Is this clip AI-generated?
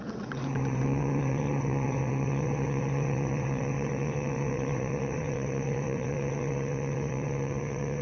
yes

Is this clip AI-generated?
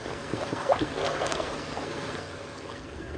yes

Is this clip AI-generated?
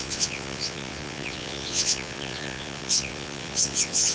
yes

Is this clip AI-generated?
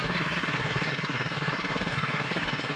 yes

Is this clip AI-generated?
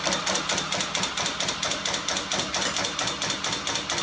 no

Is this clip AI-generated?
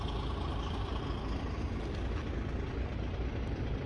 no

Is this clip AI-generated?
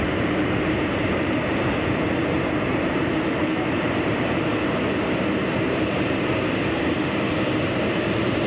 yes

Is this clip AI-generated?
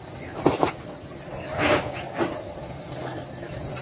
no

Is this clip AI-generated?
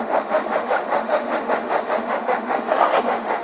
yes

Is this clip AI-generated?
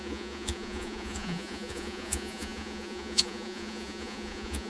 yes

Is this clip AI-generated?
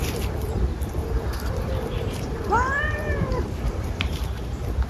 yes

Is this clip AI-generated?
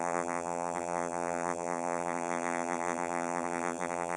yes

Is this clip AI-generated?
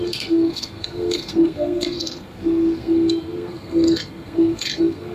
yes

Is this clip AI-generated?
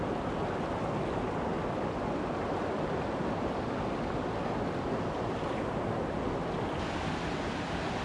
no